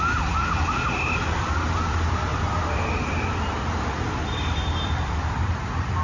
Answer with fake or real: real